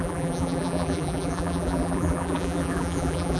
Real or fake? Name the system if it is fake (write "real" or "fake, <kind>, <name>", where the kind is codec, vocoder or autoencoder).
fake, vocoder, BigVGAN v2